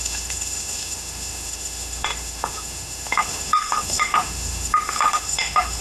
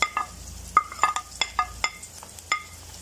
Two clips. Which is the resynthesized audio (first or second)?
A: first